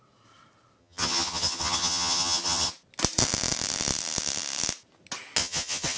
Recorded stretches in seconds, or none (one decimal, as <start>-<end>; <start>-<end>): 0.0-0.8; 2.7-5.4